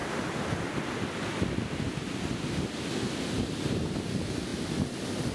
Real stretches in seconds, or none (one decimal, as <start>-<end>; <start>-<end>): 0.0-5.3